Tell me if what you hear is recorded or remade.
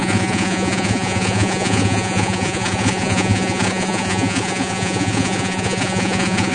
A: remade